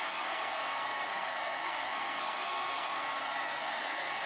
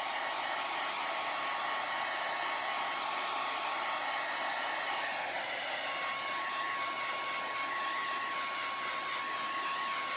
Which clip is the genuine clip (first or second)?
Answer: second